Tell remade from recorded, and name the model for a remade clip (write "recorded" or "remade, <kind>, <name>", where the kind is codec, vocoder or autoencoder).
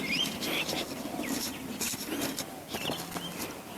recorded